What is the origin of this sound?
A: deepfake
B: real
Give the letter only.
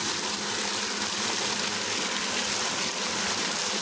B